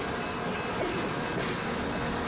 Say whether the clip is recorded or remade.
recorded